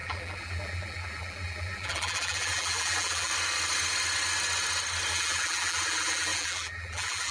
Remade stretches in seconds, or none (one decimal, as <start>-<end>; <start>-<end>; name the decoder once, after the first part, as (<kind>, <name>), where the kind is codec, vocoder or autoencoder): 0.0-3.3 (vocoder, BigVGAN v2); 5.1-7.3